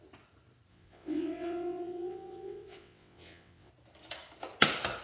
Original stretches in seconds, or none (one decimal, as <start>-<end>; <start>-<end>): 0.0-0.7; 3.7-5.0